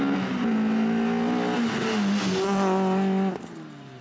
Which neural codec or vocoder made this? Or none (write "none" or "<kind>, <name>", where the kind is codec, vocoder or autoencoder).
none